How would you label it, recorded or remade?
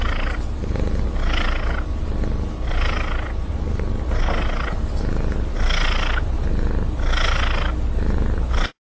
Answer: recorded